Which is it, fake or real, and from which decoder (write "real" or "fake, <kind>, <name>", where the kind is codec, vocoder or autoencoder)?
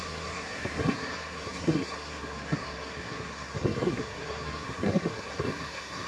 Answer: fake, codec, SNAC